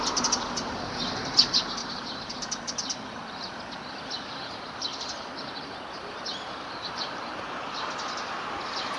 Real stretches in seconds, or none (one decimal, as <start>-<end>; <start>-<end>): 0.0-1.8; 2.5-4.9; 7.4-9.0